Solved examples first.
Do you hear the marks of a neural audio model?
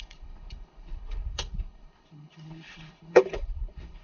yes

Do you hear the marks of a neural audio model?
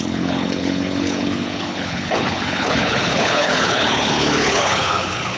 yes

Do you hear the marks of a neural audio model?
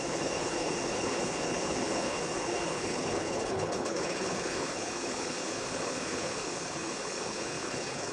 yes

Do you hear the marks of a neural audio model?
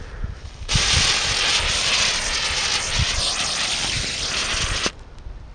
no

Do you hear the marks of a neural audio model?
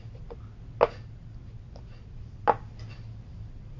no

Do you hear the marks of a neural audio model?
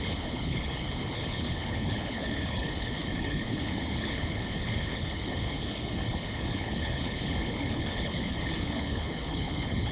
yes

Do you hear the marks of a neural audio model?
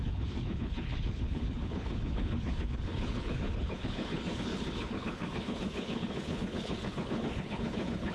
yes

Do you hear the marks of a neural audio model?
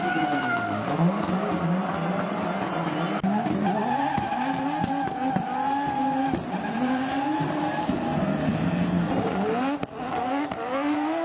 no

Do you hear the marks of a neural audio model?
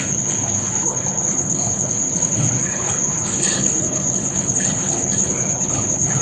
yes